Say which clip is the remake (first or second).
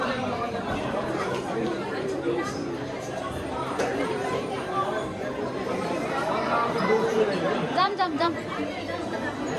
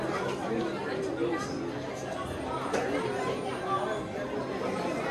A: first